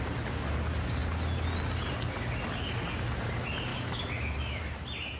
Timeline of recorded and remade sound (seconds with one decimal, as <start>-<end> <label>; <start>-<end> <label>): 0.0-3.7 recorded; 3.7-4.6 remade; 4.6-5.2 recorded